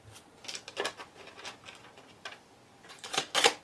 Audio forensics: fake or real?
real